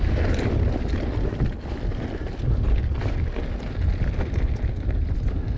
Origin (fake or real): real